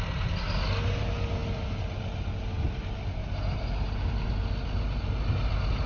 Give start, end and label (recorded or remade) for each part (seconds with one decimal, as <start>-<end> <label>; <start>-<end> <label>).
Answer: 0.0-3.2 recorded; 3.2-4.1 remade; 4.1-5.9 recorded